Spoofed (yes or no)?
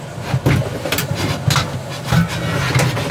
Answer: no